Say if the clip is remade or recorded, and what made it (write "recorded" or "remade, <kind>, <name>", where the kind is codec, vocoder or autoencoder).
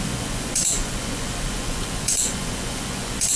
remade, vocoder, Vocos